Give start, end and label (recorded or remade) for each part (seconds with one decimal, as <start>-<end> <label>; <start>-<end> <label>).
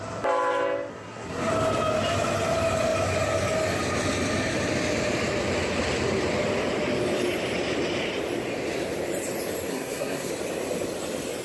0.0-0.9 recorded; 0.9-1.5 remade; 1.5-9.7 recorded; 9.7-10.3 remade; 10.3-11.4 recorded